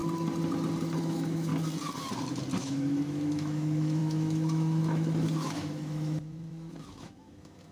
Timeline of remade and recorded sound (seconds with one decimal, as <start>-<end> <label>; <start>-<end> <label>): 0.0-1.0 recorded; 1.0-1.5 remade; 1.5-2.6 recorded; 2.6-7.7 remade